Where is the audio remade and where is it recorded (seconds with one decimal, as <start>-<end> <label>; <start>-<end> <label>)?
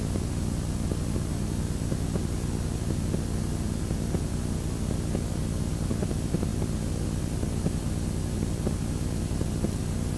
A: 0.0-10.2 recorded